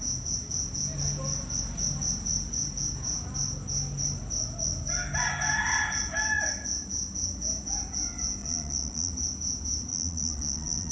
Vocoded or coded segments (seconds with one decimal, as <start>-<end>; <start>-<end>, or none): 8.4-9.1; 9.9-10.9